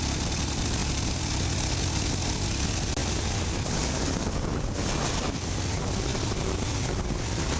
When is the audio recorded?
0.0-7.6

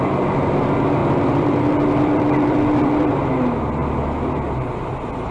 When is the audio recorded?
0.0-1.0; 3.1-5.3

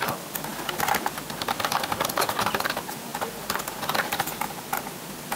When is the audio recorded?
0.0-3.1; 4.1-5.4

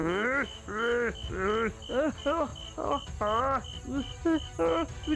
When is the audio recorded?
1.3-5.2

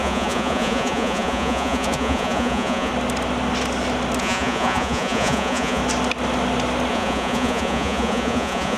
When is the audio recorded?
2.9-4.2; 5.8-6.9

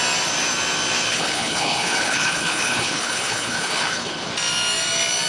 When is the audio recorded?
0.0-1.1; 4.3-5.3

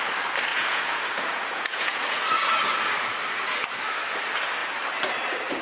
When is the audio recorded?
0.0-0.5; 2.2-5.6